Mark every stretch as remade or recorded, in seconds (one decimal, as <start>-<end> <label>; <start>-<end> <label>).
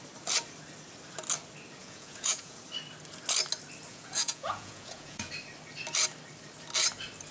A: 0.0-1.8 recorded; 1.8-2.6 remade; 2.6-3.9 recorded; 3.9-5.3 remade; 5.3-7.3 recorded